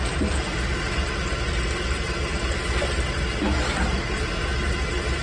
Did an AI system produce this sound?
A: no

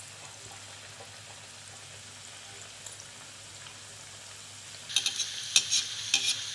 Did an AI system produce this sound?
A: no